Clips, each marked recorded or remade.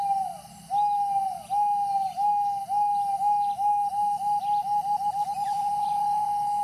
recorded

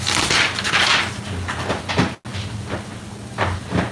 recorded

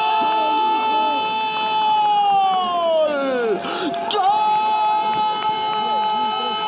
recorded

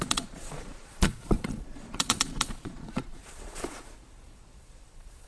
remade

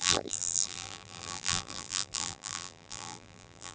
remade